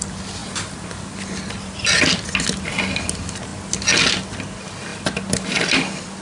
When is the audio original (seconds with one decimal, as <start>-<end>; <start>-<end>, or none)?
0.0-6.2

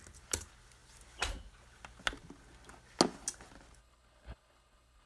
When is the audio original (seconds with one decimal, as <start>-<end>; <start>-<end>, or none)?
0.0-3.8